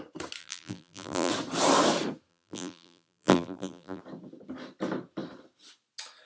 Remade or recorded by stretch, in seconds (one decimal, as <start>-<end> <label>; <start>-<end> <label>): 0.0-0.4 recorded; 0.4-1.3 remade; 1.3-2.3 recorded; 2.3-4.0 remade; 4.0-6.3 recorded